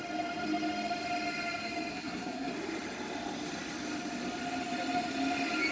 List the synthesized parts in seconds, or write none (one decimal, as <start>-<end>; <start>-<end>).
1.9-2.5